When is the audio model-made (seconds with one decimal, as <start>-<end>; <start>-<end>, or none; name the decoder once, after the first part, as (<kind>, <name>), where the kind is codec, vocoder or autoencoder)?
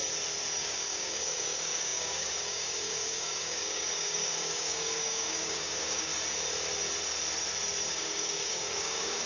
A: 0.6-6.1 (codec, DAC); 7.9-9.3